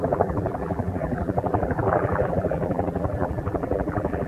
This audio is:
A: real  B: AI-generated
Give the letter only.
B